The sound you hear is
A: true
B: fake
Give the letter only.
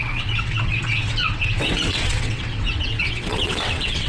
B